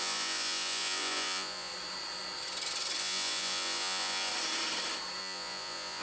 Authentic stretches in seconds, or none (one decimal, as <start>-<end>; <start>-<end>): 1.7-3.0; 4.3-5.2